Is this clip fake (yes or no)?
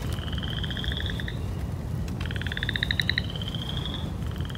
no